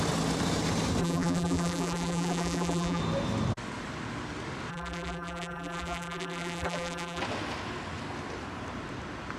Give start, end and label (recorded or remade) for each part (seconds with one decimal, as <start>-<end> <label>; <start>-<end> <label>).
0.0-1.0 recorded; 1.0-3.0 remade; 3.0-4.7 recorded; 4.7-7.2 remade; 7.2-9.4 recorded